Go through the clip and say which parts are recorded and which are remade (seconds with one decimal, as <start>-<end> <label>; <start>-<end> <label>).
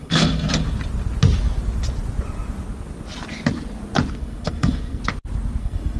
0.0-0.5 remade; 0.5-4.1 recorded; 4.1-5.0 remade; 5.0-5.6 recorded; 5.6-6.0 remade